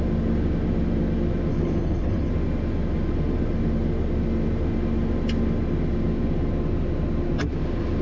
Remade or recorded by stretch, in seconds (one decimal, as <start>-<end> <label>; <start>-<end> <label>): 0.0-1.5 recorded; 1.5-2.3 remade; 2.3-8.0 recorded